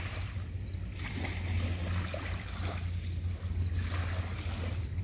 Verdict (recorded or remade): recorded